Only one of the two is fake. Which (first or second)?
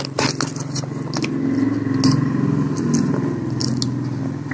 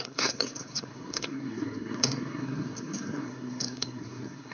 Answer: second